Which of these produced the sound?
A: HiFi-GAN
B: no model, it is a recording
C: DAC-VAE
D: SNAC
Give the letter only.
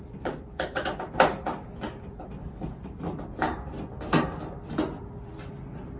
B